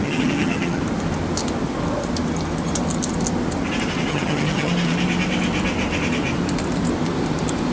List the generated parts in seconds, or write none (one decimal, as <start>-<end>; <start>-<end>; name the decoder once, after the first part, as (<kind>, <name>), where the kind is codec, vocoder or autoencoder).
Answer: 0.0-0.8 (vocoder, HiFi-GAN); 4.1-4.7